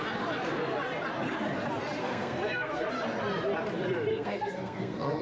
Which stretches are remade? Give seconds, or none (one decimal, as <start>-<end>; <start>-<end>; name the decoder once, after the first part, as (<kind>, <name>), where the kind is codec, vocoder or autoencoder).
2.0-2.9 (codec, SNAC); 4.1-5.2